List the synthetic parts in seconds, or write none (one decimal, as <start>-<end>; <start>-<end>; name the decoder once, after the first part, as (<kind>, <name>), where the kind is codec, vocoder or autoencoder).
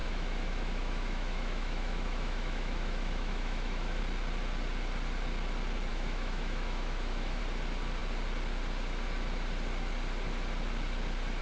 0.0-4.0 (autoencoder, DAC-VAE); 5.9-7.4